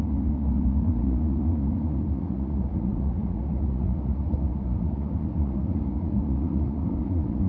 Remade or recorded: remade